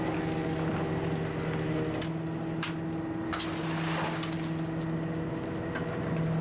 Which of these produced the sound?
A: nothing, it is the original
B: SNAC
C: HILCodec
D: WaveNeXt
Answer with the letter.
A